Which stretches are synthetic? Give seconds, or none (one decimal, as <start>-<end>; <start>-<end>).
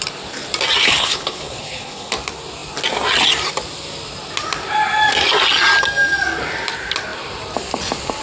0.8-2.1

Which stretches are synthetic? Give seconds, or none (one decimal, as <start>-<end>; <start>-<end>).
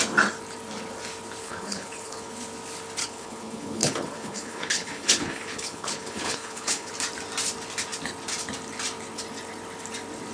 1.4-2.3; 3.0-6.9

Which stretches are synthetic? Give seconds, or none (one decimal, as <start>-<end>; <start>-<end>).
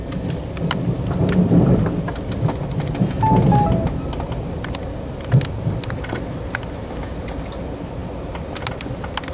none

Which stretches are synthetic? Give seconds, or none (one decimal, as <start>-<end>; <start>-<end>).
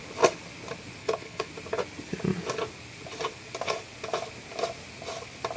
1.0-1.5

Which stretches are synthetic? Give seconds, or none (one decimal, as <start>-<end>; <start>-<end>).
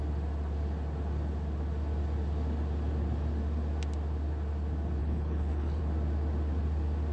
5.0-5.8